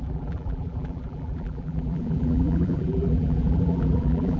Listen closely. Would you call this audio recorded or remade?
remade